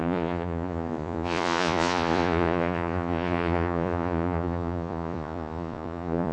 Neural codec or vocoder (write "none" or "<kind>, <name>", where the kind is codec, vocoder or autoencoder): vocoder, Vocos